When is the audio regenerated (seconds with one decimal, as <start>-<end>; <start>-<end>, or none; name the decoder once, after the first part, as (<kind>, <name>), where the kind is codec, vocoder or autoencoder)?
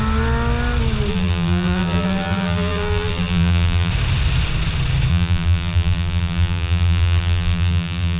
1.1-3.9 (vocoder, BigVGAN v2); 5.1-8.2